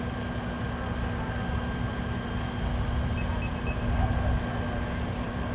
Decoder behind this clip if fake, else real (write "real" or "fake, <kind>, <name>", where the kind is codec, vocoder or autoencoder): real